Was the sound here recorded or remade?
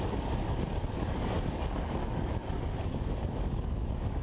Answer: remade